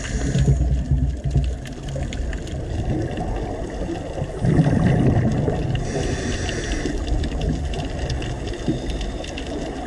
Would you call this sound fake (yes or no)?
no